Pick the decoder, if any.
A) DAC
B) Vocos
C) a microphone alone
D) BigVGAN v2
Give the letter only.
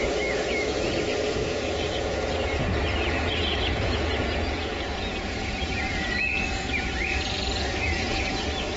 B